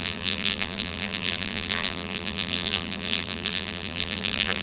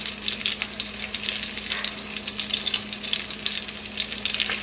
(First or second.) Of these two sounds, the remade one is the first